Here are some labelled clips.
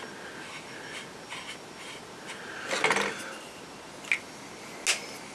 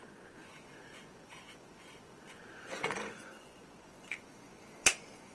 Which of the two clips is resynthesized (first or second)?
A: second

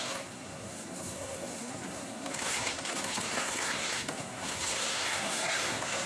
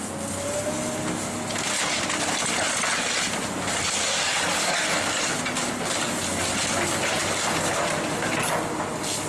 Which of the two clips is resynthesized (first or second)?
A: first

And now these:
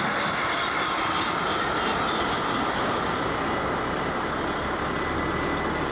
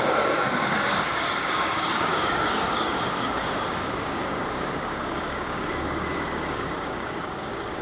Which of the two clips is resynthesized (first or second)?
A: second